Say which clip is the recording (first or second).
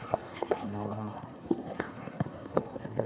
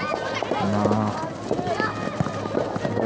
second